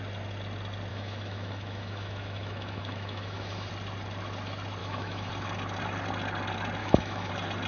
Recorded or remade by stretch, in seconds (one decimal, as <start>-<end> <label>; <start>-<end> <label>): 0.0-0.9 recorded; 0.9-3.7 remade; 3.7-4.8 recorded; 4.8-5.3 remade; 5.3-6.8 recorded; 6.8-7.3 remade; 7.3-7.7 recorded

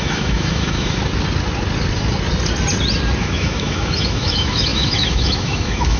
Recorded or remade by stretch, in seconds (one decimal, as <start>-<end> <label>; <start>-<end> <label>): 0.0-1.0 remade; 1.0-3.2 recorded; 3.2-6.0 remade

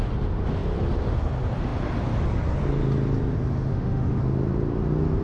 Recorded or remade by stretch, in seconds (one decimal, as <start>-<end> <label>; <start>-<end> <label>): 0.0-3.7 recorded; 3.7-4.2 remade; 4.2-5.2 recorded